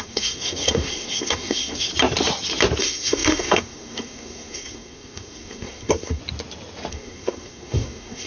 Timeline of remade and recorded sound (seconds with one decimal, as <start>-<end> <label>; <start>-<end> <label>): 0.0-1.9 remade; 1.9-2.8 recorded; 2.8-6.2 remade; 6.2-6.9 recorded; 6.9-8.3 remade